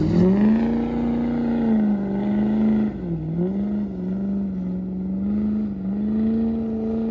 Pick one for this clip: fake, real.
real